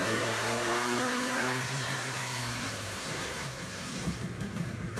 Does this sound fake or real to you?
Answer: fake